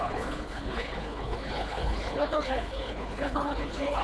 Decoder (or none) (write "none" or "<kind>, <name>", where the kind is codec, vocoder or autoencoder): codec, HILCodec